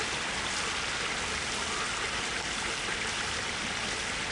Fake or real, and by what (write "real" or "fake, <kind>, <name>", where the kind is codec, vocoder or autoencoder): real